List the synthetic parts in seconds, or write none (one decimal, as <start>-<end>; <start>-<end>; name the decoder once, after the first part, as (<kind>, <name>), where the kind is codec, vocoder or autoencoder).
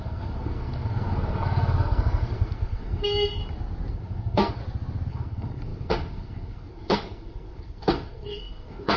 0.0-3.4 (codec, SNAC); 3.9-4.6; 5.1-9.0